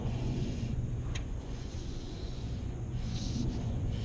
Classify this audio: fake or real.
fake